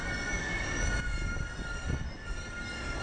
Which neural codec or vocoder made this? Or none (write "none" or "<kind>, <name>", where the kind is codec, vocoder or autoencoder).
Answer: none